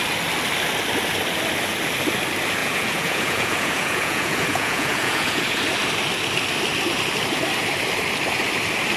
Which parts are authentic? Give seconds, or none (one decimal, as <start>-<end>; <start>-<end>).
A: 0.0-2.6; 5.6-9.0